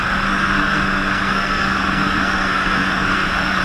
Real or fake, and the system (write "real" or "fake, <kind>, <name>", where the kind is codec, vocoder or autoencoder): fake, codec, SNAC